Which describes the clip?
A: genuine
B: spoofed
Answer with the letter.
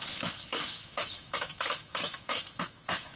B